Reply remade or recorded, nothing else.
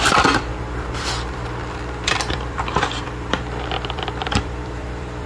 remade